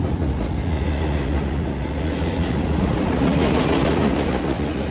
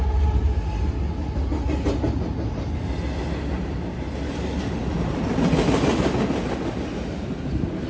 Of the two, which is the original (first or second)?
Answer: second